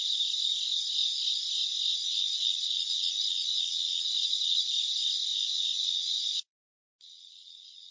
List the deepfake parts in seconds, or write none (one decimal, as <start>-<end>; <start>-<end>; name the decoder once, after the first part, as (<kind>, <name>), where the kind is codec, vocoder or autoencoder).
2.0-4.7 (vocoder, Vocos); 5.3-7.9